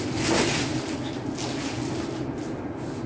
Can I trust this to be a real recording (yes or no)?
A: yes